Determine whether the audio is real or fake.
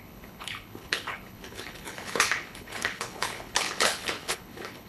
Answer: fake